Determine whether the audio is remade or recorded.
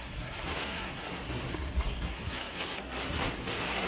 remade